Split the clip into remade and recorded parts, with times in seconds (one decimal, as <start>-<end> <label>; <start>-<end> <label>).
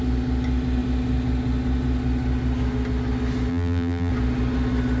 0.0-3.5 recorded; 3.5-4.1 remade; 4.1-5.0 recorded